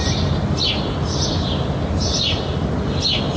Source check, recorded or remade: recorded